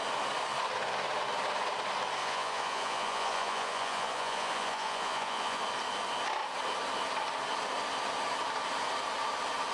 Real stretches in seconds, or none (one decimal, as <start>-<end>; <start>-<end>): 0.0-2.2; 5.6-9.7